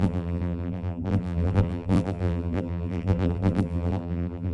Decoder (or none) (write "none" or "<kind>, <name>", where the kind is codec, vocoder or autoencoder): vocoder, BigVGAN v2